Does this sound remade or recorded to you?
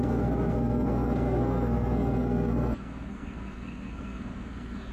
remade